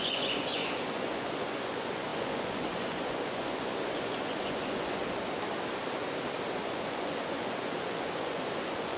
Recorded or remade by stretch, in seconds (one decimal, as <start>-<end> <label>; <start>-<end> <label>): 0.0-5.0 remade; 5.0-6.6 recorded; 6.6-9.0 remade

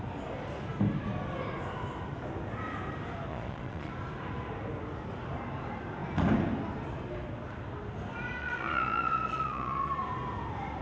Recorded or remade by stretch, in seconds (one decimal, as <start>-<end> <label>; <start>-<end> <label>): 0.0-3.3 recorded; 3.3-3.9 remade; 3.9-8.4 recorded; 8.4-10.0 remade; 10.0-10.8 recorded

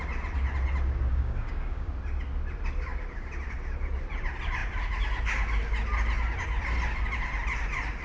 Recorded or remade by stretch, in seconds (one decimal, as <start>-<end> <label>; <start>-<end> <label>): 0.0-1.1 recorded; 1.1-1.9 remade; 1.9-8.0 recorded

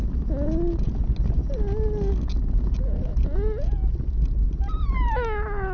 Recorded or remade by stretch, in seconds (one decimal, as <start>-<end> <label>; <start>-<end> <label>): 0.0-5.7 recorded

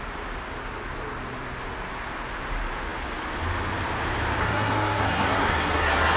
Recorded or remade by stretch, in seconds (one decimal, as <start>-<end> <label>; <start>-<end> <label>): 0.0-4.4 recorded; 4.4-6.2 remade

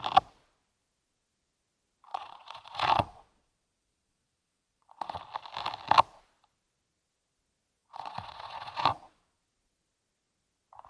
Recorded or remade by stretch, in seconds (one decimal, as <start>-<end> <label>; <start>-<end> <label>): 0.0-2.1 recorded; 2.1-5.2 remade; 5.2-7.8 recorded; 7.8-9.4 remade; 9.4-10.9 recorded

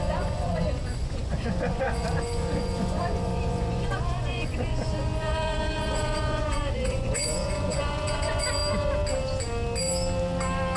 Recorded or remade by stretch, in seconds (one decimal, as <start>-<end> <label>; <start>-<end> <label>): 0.0-8.6 remade; 8.6-10.8 recorded

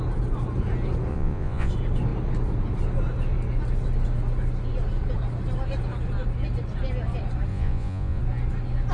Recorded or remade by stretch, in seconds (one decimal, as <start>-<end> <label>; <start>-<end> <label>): 0.0-1.1 recorded; 1.1-1.7 remade; 1.7-7.5 recorded; 7.5-8.2 remade; 8.2-8.9 recorded